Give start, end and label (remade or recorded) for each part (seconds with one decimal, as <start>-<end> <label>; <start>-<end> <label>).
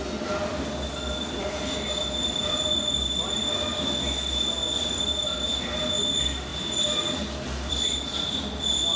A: 0.0-9.0 recorded